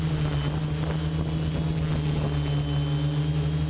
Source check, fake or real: real